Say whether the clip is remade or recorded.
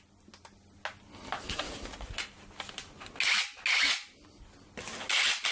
recorded